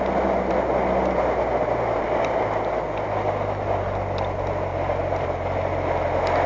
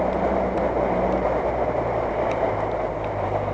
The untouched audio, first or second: first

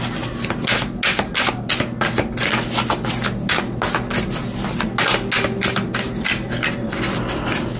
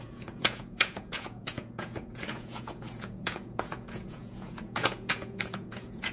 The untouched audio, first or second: first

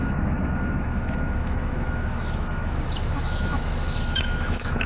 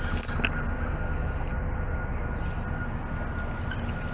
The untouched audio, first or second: second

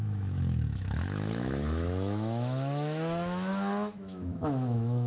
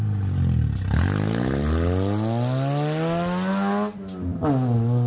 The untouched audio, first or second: second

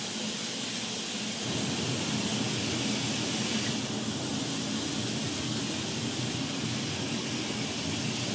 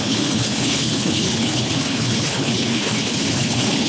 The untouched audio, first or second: first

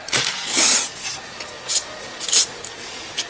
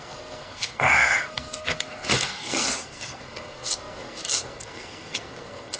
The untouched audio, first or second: first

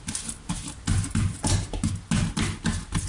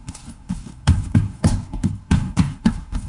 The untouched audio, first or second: first